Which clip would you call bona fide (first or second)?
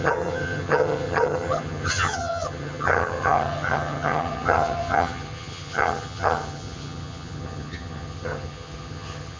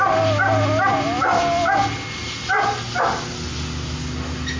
second